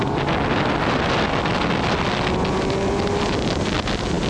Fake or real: real